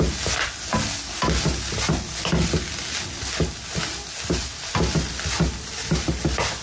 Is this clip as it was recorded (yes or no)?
yes